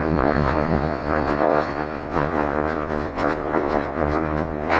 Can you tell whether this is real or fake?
fake